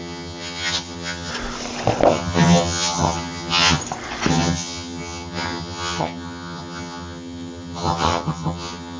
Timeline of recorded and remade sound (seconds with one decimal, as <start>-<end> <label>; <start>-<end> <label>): 0.0-1.3 remade; 1.3-2.1 recorded; 2.1-3.8 remade; 3.8-4.3 recorded; 4.3-9.0 remade